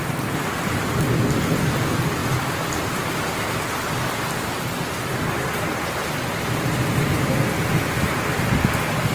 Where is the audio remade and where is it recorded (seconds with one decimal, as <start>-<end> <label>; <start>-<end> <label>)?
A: 0.0-9.1 recorded